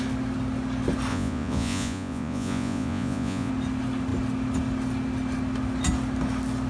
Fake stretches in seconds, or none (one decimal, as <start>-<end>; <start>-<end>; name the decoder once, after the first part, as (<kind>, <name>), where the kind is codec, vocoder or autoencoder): 1.1-3.5 (vocoder, Vocos)